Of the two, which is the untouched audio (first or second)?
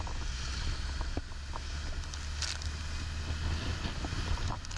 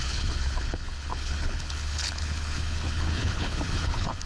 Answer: first